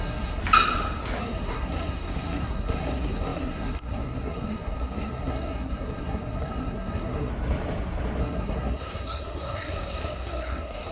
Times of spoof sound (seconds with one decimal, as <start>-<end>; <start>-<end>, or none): 0.0-0.4; 1.2-7.3; 8.2-10.9